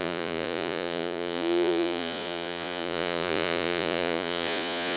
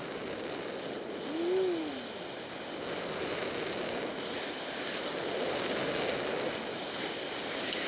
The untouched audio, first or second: second